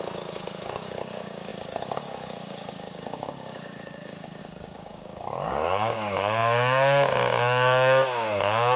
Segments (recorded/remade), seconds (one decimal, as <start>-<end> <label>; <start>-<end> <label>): 0.0-8.8 remade

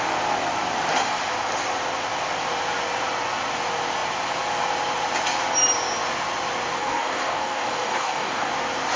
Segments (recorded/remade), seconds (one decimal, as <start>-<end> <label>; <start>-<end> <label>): 0.0-6.8 recorded; 6.8-8.5 remade; 8.5-9.0 recorded

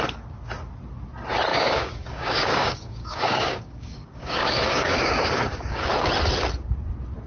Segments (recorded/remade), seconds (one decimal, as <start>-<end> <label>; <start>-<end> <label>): 0.0-1.5 recorded; 1.5-5.9 remade; 5.9-7.3 recorded

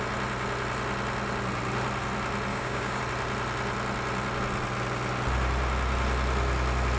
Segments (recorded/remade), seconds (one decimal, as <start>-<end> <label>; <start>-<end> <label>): 0.0-2.5 recorded; 2.5-3.0 remade; 3.0-7.0 recorded

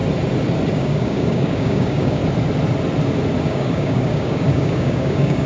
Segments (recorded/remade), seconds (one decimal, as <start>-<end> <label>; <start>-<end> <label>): 0.0-0.7 recorded; 0.7-2.2 remade; 2.2-3.5 recorded; 3.5-5.5 remade

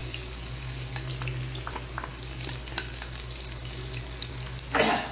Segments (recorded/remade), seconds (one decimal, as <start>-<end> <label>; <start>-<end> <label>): 0.0-1.1 remade; 1.1-2.1 recorded; 2.1-4.3 remade; 4.3-5.1 recorded

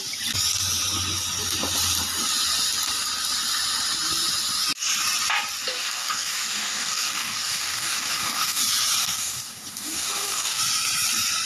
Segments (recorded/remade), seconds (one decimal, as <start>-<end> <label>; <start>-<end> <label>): 0.0-5.7 recorded; 5.7-8.6 remade; 8.6-9.0 recorded; 9.0-10.6 remade; 10.6-11.5 recorded

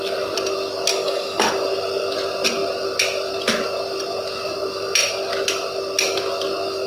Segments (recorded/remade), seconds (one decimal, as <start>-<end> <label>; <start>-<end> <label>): 0.0-0.9 recorded; 0.9-1.5 remade; 1.5-6.9 recorded